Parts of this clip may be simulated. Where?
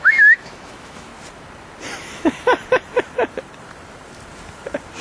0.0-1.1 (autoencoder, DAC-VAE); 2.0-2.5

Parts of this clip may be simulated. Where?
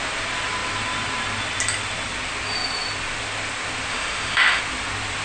3.9-4.6 (autoencoder, DAC-VAE)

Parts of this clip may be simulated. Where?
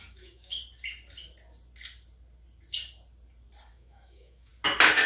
0.0-0.6 (autoencoder, DAC-VAE); 3.7-4.5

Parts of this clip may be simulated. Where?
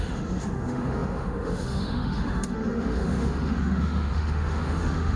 0.0-5.2 (autoencoder, DAC-VAE)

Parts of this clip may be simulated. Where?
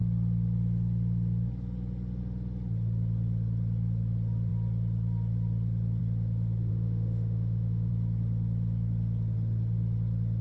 6.7-7.9 (autoencoder, DAC-VAE)